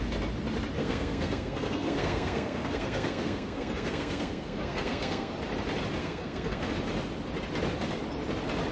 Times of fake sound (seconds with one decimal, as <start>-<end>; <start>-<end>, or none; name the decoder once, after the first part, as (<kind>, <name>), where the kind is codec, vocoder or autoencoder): 0.8-5.3 (codec, SNAC); 6.0-6.7